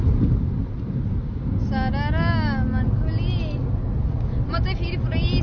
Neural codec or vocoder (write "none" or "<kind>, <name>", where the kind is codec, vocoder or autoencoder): none